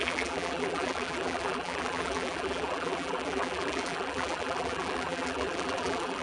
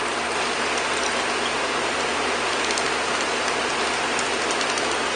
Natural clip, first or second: second